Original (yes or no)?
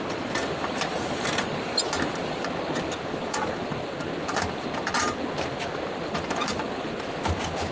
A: yes